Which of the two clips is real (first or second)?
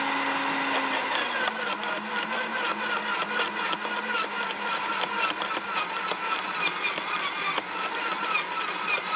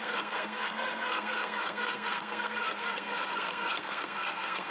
first